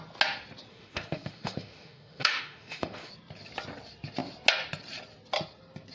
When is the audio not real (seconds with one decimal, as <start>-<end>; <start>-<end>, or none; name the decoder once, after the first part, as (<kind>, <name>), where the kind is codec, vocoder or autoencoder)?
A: 0.7-3.1 (autoencoder, DAC-VAE)